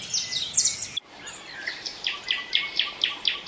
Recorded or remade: recorded